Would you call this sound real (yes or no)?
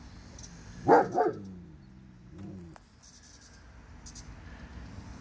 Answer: yes